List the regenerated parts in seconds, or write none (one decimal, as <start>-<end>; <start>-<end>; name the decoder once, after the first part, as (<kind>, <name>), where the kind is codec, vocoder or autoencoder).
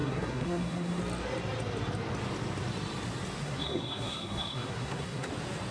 0.0-1.0 (codec, SNAC); 3.4-5.3